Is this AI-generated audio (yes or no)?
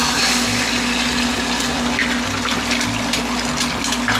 no